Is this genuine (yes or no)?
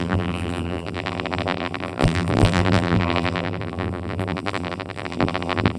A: no